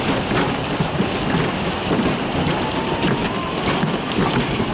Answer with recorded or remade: recorded